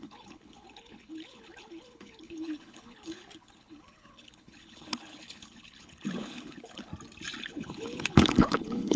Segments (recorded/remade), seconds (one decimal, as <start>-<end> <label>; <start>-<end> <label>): 0.0-6.9 remade; 6.9-7.4 recorded; 7.4-9.0 remade